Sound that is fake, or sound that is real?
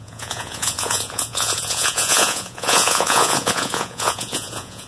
fake